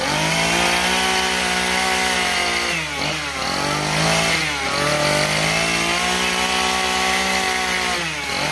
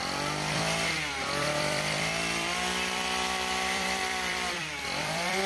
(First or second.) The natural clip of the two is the first